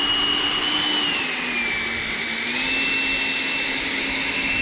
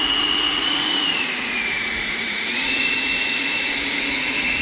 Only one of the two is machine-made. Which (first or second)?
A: second